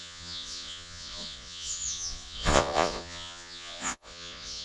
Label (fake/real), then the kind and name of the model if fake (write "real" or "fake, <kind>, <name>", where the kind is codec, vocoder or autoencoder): fake, vocoder, Vocos